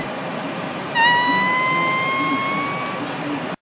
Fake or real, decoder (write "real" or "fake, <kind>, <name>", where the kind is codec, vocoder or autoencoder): real